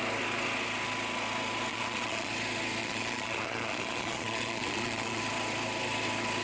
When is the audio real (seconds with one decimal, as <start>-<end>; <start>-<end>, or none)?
0.0-1.7; 2.3-2.8; 5.2-6.4